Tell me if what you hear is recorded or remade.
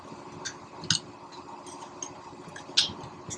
recorded